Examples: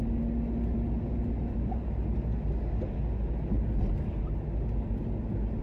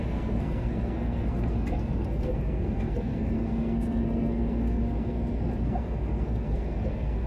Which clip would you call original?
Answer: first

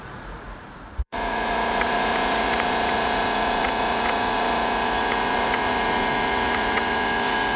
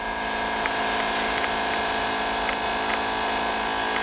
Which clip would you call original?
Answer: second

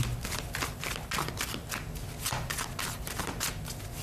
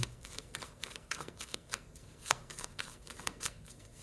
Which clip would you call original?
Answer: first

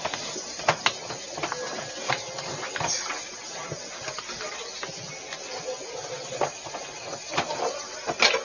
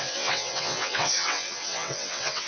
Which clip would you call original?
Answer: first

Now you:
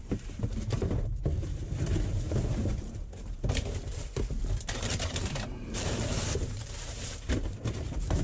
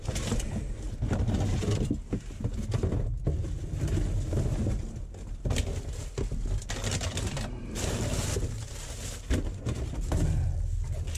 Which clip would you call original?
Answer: second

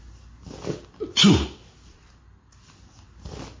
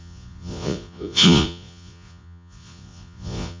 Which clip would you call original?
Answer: first